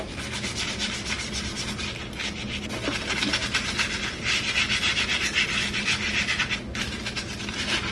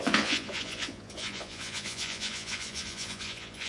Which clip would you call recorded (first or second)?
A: first